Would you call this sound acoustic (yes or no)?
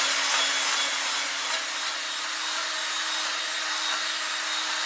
yes